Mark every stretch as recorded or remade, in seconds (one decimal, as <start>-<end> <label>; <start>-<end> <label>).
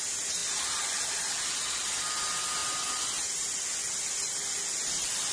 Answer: 0.0-5.3 recorded